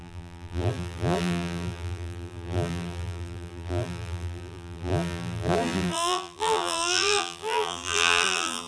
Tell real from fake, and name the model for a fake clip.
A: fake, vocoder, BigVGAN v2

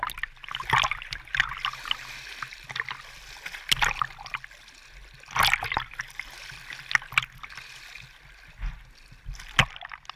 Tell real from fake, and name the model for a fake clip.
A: real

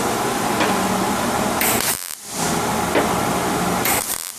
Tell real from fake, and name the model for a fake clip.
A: real